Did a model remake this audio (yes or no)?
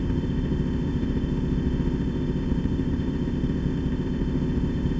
yes